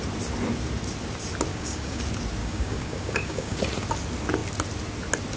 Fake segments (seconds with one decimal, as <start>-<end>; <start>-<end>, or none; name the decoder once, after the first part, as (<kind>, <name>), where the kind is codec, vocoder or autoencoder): 1.5-2.0 (codec, DAC); 2.4-3.6